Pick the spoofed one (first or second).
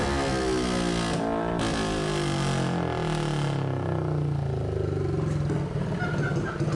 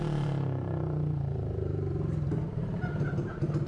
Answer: second